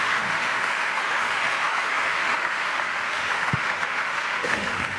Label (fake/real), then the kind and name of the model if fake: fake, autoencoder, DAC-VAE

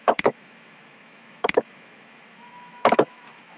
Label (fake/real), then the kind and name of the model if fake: fake, autoencoder, DAC-VAE